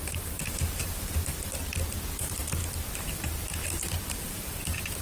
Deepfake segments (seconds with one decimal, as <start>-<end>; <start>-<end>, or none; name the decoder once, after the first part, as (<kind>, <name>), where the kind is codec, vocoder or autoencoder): 0.0-1.6 (vocoder, BigVGAN v2); 2.2-3.6; 4.2-5.0